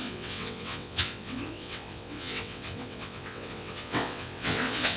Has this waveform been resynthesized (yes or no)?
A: yes